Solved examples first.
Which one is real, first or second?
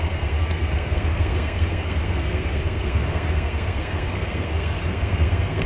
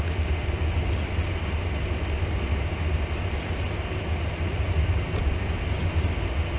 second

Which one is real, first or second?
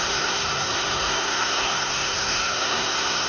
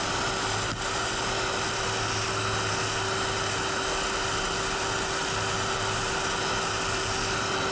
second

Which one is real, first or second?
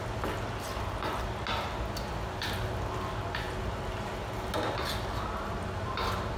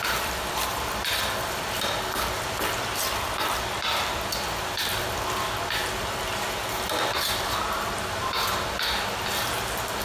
first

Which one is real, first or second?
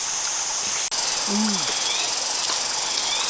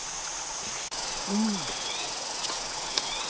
first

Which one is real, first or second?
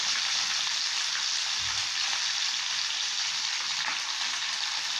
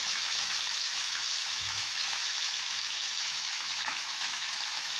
first